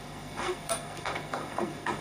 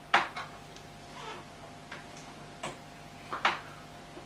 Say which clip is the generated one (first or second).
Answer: first